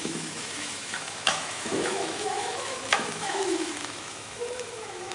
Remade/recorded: remade